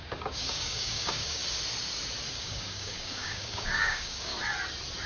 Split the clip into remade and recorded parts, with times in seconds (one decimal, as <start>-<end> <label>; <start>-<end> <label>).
0.0-1.4 remade; 1.4-2.3 recorded; 2.3-4.3 remade; 4.3-5.1 recorded